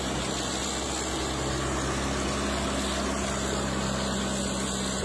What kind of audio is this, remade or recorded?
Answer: recorded